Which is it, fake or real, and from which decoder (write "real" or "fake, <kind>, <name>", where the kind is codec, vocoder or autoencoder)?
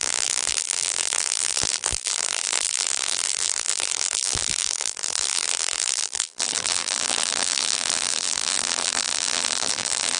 fake, vocoder, BigVGAN v2